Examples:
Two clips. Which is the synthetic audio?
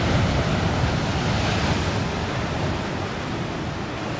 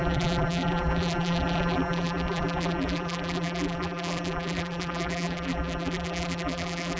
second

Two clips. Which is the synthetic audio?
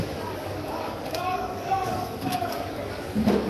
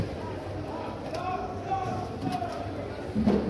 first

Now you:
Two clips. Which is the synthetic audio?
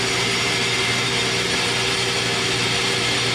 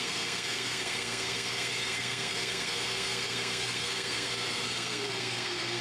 second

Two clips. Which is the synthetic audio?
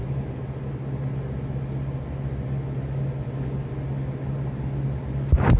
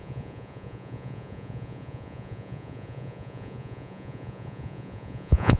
second